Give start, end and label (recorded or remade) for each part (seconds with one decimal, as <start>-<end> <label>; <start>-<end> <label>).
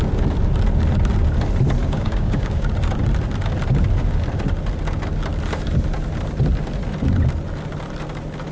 0.0-1.8 recorded; 1.8-2.7 remade; 2.7-8.5 recorded